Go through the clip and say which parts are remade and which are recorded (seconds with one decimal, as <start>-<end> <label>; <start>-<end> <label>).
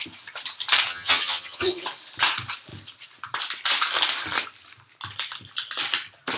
0.0-0.9 recorded; 0.9-1.8 remade; 1.8-6.4 recorded